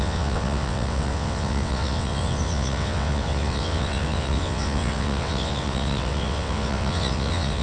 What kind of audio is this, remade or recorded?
remade